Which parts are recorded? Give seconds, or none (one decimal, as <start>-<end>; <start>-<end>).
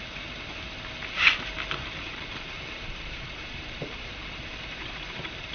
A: 0.0-2.1